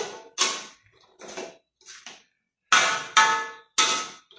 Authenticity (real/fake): real